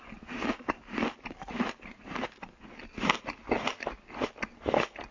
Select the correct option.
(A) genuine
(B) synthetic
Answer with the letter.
A